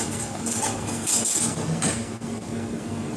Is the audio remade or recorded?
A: remade